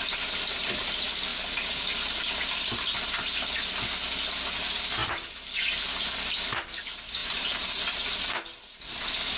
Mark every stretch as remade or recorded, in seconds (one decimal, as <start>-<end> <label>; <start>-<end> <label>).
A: 0.0-7.2 recorded; 7.2-7.8 remade; 7.8-9.4 recorded